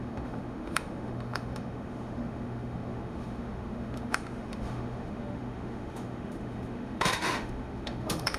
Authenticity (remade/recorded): remade